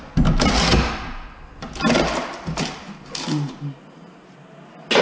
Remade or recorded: recorded